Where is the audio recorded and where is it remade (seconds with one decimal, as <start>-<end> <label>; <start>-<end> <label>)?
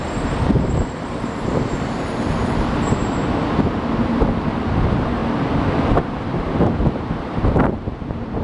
0.0-3.0 remade; 3.0-4.0 recorded; 4.0-5.2 remade; 5.2-5.8 recorded; 5.8-8.4 remade